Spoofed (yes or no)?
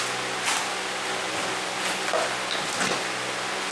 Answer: no